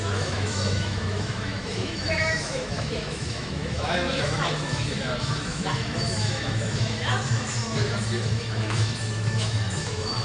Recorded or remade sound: remade